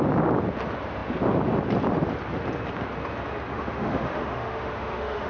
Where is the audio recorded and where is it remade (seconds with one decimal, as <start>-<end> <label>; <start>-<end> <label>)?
0.0-3.5 recorded; 3.5-5.3 remade